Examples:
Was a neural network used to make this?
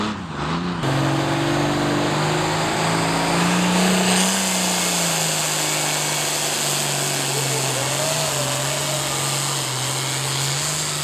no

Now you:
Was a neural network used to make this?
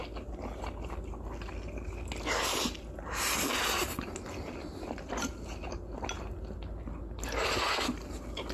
no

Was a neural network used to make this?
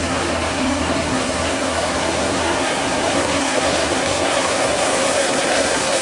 yes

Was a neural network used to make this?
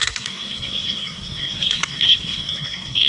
yes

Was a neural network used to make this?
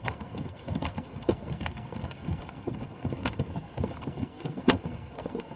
yes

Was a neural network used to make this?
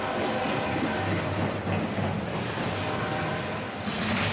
no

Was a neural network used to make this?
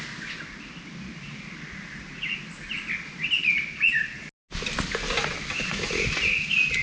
no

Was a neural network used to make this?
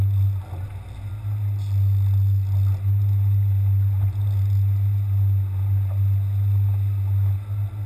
no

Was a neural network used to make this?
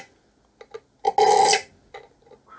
no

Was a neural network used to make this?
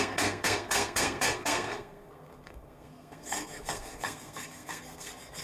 yes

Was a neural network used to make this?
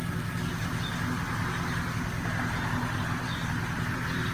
no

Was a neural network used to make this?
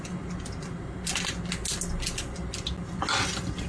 no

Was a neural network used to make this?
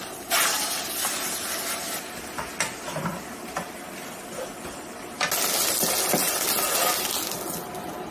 no